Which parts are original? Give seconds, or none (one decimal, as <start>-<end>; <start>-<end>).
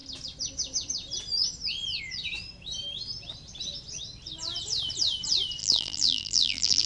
0.0-5.6